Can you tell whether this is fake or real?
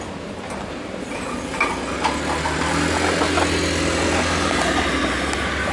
real